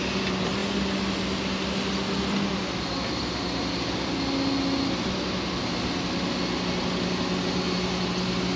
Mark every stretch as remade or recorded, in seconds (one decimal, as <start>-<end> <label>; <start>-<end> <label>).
0.0-8.6 recorded